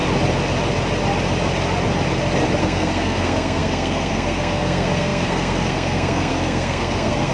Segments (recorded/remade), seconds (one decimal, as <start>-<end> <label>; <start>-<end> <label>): 0.0-2.6 recorded; 2.6-7.3 remade